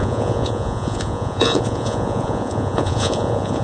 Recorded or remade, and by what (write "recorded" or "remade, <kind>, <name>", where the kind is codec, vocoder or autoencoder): remade, vocoder, Vocos